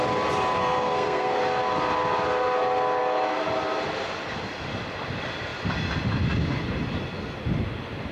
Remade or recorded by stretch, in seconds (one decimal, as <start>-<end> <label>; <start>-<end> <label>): 0.0-0.6 recorded; 0.6-1.4 remade; 1.4-8.1 recorded